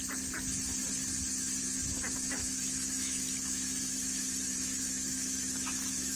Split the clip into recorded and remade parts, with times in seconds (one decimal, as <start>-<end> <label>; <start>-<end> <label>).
0.0-2.4 recorded; 2.4-6.2 remade